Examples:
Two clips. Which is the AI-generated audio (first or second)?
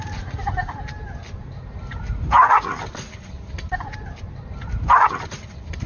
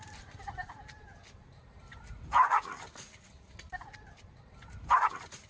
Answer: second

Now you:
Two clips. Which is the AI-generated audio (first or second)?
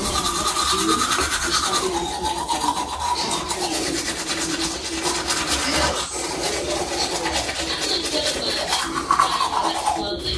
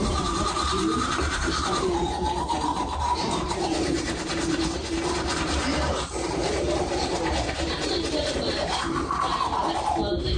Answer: second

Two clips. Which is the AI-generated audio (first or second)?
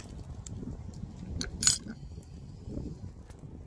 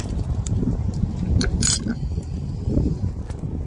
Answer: second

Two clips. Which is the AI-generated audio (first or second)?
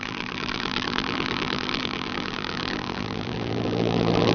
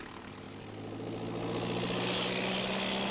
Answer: first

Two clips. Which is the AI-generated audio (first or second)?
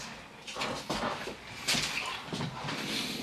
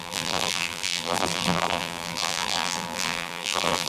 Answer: second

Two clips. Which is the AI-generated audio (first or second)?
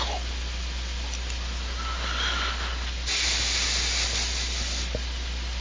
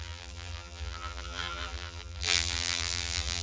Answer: second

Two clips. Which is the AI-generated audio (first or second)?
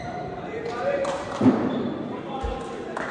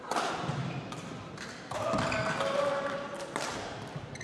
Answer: second